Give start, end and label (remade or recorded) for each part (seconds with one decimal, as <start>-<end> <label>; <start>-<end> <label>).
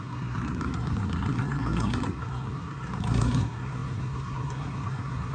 0.0-5.3 remade